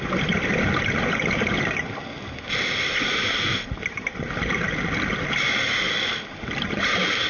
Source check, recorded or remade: recorded